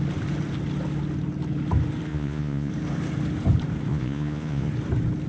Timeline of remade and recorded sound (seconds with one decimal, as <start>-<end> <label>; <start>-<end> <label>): 0.0-2.1 recorded; 2.1-2.7 remade; 2.7-3.9 recorded; 3.9-4.7 remade; 4.7-5.3 recorded